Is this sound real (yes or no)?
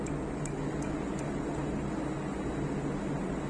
yes